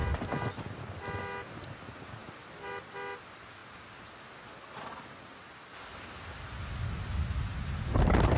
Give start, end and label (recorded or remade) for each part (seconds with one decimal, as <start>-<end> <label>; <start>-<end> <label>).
0.0-8.4 recorded